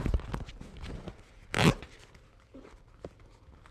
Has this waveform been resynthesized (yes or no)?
no